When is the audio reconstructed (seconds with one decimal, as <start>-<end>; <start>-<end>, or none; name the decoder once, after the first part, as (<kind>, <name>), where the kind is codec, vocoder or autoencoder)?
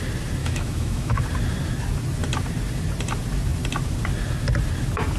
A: 0.4-1.2 (autoencoder, DAC-VAE)